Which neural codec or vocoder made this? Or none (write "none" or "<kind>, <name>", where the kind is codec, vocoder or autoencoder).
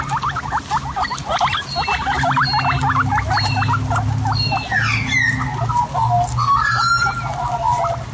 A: none